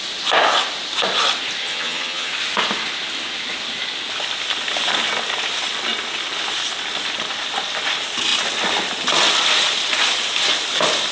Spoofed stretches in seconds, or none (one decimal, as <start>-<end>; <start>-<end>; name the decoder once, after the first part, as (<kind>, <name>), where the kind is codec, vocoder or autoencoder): 1.6-2.3 (vocoder, HiFi-GAN)